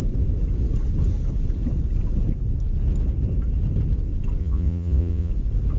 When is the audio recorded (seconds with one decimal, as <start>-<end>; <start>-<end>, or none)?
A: 0.0-4.4; 5.3-5.8